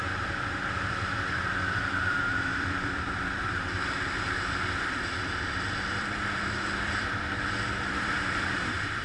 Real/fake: fake